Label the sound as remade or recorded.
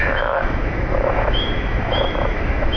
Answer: remade